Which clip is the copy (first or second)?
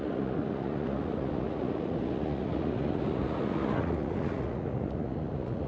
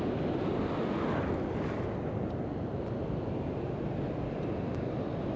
first